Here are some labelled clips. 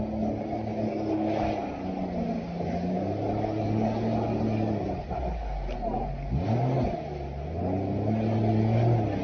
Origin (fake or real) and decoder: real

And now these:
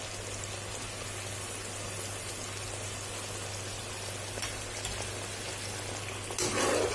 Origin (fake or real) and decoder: real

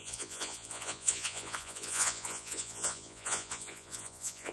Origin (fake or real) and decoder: fake, vocoder, Vocos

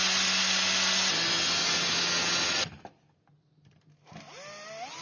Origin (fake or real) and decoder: real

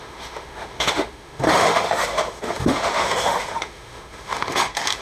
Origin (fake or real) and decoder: fake, autoencoder, DAC-VAE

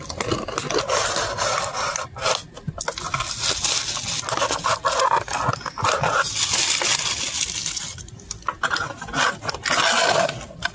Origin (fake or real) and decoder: real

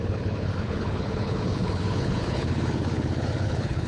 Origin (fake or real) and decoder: fake, codec, HILCodec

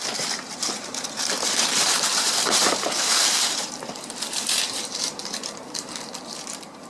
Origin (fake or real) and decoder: fake, vocoder, BigVGAN v2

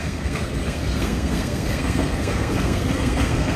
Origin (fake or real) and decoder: fake, codec, SNAC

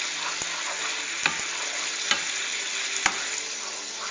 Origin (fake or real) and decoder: real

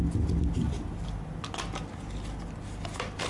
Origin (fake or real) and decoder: real